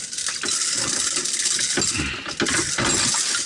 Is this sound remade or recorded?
recorded